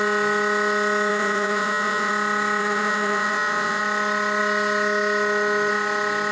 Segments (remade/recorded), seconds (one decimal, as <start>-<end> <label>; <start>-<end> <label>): 0.0-1.1 recorded; 1.1-2.1 remade; 2.1-2.6 recorded; 2.6-3.8 remade; 3.8-6.3 recorded